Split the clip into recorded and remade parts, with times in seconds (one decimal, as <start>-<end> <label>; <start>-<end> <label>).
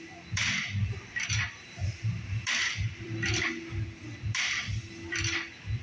0.0-5.8 remade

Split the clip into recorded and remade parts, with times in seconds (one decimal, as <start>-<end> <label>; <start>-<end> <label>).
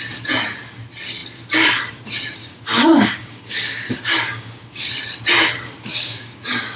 0.0-2.4 recorded; 2.4-4.8 remade; 4.8-5.9 recorded; 5.9-6.8 remade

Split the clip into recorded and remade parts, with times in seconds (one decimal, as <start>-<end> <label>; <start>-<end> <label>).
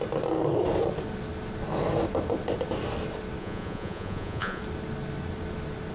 0.0-3.4 recorded; 3.4-4.6 remade; 4.6-5.9 recorded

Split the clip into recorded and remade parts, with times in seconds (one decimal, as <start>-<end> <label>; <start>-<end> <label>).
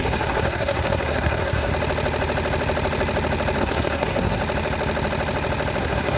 0.0-1.7 remade; 1.7-3.6 recorded; 3.6-4.4 remade; 4.4-5.8 recorded; 5.8-6.2 remade